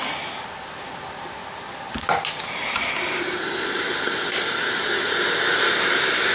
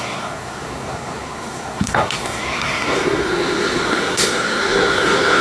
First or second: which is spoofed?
second